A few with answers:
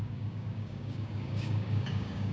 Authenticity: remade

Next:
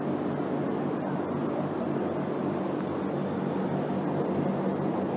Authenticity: recorded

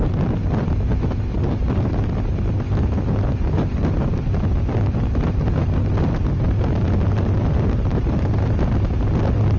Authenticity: recorded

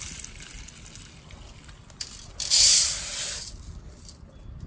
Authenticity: recorded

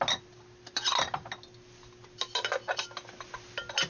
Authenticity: recorded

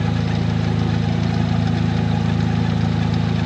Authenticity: recorded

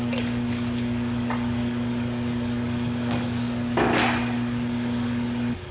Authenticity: remade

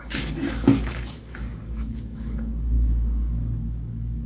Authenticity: remade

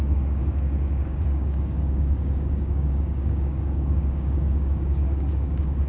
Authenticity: remade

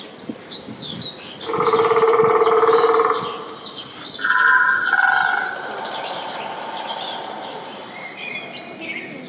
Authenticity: recorded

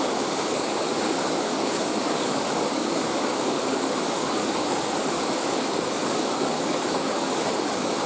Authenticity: remade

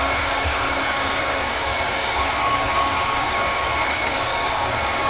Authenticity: remade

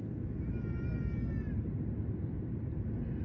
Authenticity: recorded